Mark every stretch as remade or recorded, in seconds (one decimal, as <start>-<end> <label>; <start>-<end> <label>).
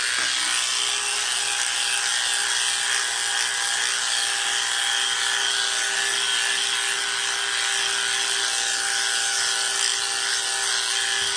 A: 0.0-11.4 recorded